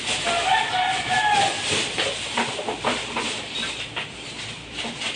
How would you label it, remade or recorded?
recorded